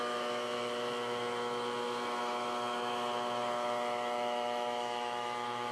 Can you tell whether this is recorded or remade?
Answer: remade